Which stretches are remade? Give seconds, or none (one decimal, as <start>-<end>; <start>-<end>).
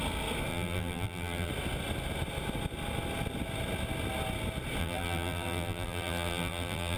0.5-1.5; 4.8-7.0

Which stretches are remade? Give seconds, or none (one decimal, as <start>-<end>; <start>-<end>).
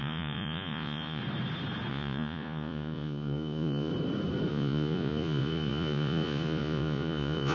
0.0-1.2; 1.9-3.9; 4.5-7.5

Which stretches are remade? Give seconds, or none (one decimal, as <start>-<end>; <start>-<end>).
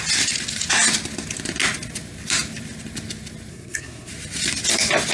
3.5-4.1